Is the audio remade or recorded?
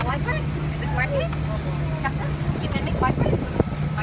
recorded